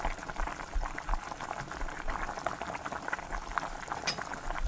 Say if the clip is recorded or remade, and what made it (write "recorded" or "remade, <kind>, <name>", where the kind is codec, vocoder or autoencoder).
recorded